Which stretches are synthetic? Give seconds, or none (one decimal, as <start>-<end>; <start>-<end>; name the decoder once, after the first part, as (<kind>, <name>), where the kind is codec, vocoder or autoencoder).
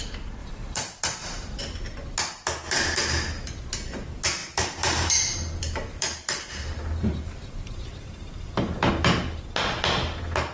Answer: 0.4-1.6 (vocoder, BigVGAN v2); 4.4-8.9